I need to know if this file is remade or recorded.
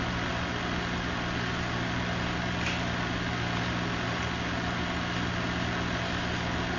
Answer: recorded